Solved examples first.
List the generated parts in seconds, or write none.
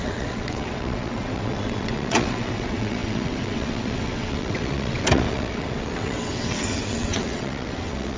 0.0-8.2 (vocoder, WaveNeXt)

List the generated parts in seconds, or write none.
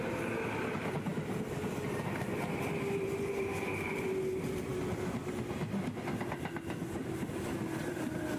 1.1-4.1 (vocoder, BigVGAN v2)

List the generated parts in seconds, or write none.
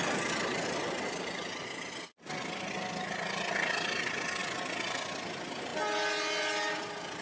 none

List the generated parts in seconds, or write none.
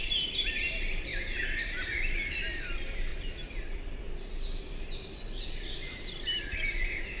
0.0-3.1 (vocoder, BigVGAN v2); 6.7-7.2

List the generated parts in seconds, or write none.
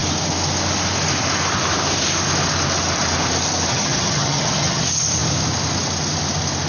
3.7-4.8 (vocoder, HiFi-GAN)